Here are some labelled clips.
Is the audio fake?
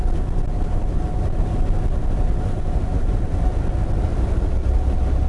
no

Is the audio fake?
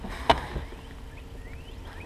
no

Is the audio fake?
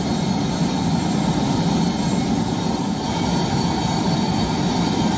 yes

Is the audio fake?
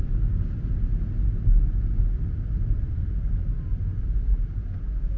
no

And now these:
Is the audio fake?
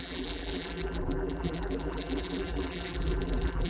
yes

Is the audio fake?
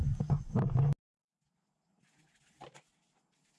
no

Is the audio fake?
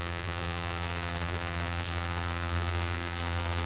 yes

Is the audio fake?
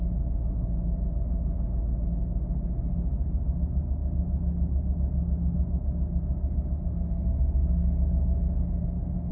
no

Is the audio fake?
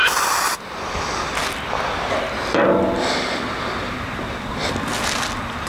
no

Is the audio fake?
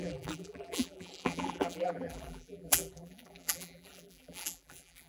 yes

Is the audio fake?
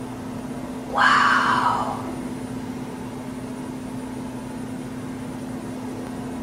no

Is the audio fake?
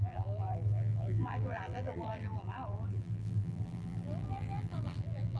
yes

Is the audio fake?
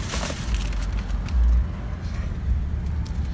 no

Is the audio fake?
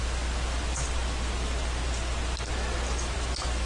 no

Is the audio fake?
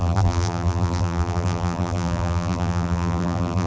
yes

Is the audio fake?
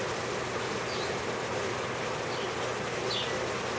no